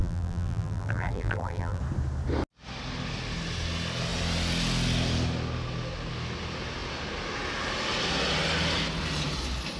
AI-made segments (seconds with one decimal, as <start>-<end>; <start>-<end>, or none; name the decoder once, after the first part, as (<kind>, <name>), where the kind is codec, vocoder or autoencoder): 0.0-1.8 (vocoder, BigVGAN v2)